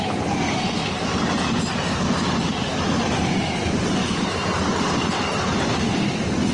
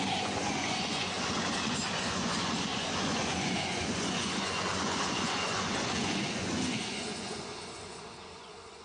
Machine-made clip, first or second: second